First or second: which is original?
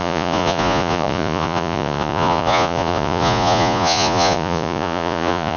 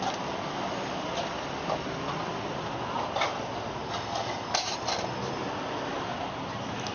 second